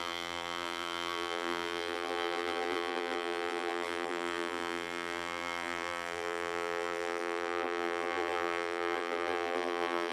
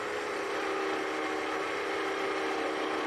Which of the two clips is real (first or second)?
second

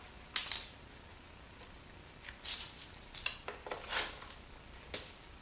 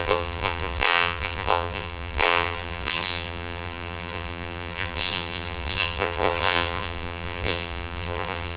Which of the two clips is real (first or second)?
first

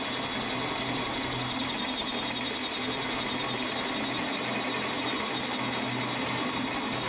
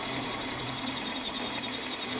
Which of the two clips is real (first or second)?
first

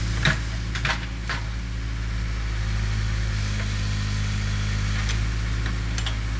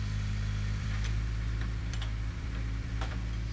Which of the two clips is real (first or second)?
first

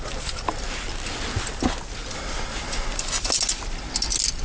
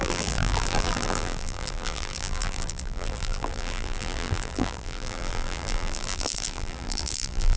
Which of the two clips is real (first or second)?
first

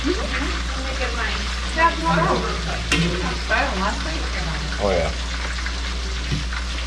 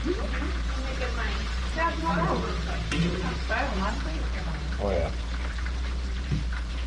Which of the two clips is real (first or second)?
first